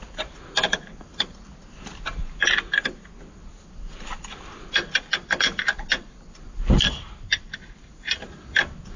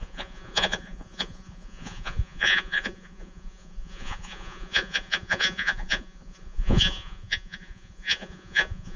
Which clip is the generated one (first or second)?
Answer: second